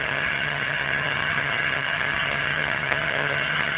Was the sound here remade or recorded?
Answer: remade